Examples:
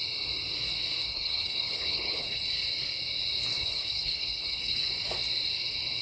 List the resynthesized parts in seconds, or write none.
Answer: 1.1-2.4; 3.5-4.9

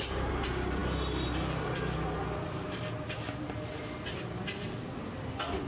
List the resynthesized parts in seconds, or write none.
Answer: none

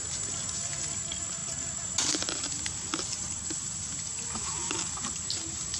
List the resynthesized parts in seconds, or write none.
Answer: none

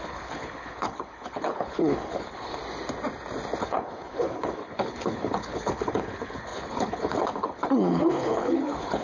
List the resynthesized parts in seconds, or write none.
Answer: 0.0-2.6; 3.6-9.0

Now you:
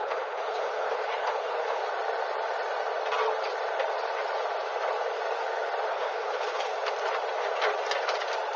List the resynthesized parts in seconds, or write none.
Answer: 0.0-1.8; 5.9-6.7

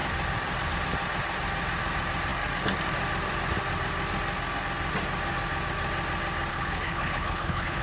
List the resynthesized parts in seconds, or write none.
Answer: 6.5-7.8

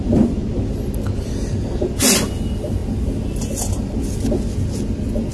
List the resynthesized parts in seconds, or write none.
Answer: none

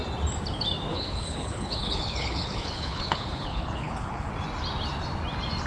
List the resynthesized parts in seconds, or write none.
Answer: 0.9-4.3